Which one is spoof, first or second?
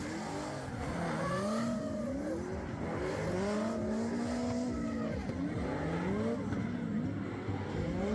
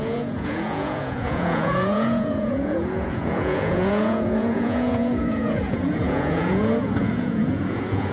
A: second